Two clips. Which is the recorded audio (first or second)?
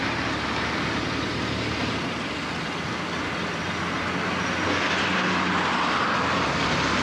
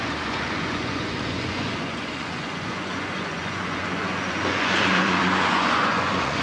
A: first